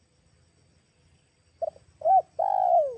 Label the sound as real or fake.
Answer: real